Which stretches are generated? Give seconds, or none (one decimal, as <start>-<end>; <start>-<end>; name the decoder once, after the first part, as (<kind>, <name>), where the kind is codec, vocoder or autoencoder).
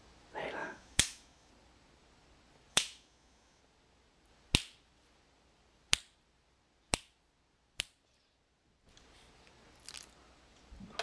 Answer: 0.6-1.5 (autoencoder, DAC-VAE); 2.7-3.6